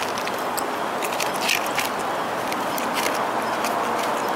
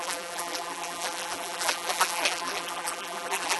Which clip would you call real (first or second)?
first